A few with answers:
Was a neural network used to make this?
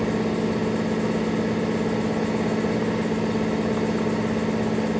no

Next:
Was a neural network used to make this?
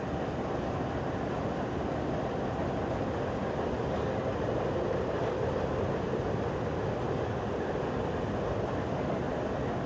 no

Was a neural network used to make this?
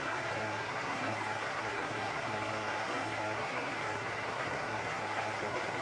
yes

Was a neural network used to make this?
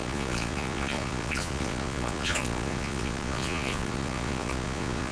yes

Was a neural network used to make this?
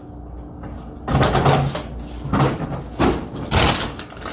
no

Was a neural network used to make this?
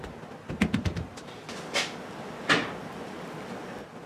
no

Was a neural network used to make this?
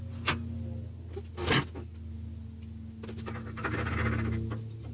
no